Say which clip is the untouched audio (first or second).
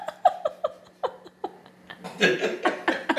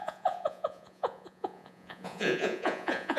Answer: first